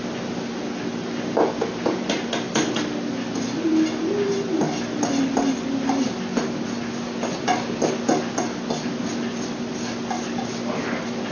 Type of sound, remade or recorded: recorded